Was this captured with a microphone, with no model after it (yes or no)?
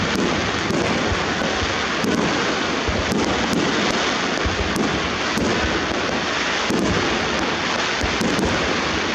yes